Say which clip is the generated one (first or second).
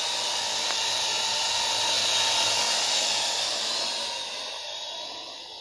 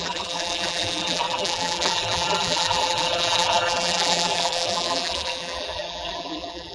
second